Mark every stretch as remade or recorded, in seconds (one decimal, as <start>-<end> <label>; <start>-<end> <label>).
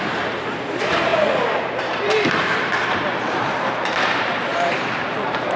0.0-5.6 remade